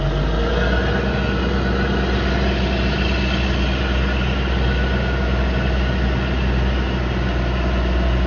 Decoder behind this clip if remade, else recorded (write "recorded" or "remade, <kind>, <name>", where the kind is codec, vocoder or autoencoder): recorded